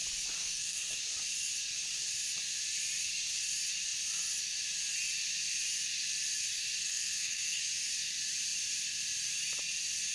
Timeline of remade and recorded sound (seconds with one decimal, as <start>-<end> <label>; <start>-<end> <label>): 0.0-0.4 recorded; 0.4-1.0 remade; 1.0-6.8 recorded; 6.8-7.6 remade; 7.6-10.1 recorded